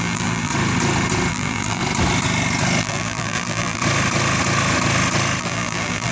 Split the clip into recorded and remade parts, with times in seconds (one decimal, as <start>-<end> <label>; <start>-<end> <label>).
0.0-0.5 remade; 0.5-1.3 recorded; 1.3-1.8 remade; 1.8-2.8 recorded; 2.8-3.8 remade; 3.8-5.4 recorded; 5.4-6.1 remade